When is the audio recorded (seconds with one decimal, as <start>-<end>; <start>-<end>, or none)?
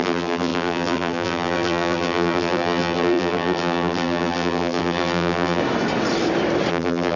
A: 5.6-6.7